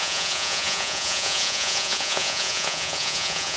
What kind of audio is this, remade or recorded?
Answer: remade